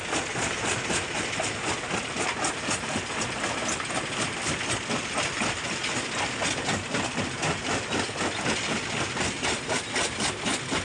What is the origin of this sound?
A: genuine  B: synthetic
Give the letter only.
A